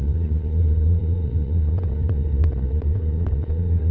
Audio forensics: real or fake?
fake